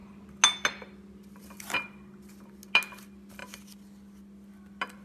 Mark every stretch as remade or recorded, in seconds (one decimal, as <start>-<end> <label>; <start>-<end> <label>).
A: 0.0-5.0 recorded